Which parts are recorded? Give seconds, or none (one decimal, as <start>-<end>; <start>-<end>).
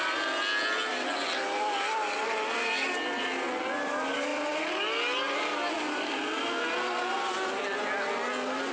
0.0-8.7